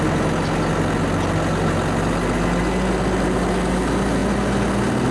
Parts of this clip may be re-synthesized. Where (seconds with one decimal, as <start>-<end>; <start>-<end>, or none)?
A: none